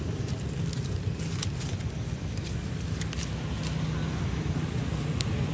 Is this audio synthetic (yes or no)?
no